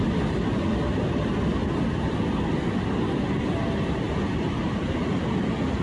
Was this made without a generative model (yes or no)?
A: yes